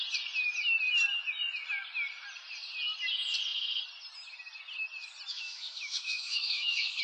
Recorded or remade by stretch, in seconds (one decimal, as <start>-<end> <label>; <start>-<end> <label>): 0.0-5.3 recorded; 5.3-7.0 remade